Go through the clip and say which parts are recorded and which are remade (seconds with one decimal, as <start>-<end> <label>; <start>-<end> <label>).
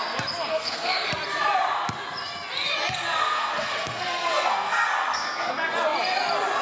0.0-0.5 recorded; 0.5-1.1 remade; 1.1-3.2 recorded; 3.2-5.5 remade; 5.5-6.6 recorded